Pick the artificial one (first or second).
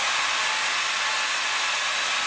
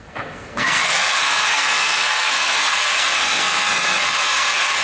second